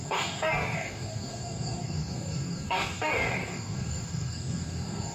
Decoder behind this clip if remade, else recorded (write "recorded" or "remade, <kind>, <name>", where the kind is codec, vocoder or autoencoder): remade, codec, DAC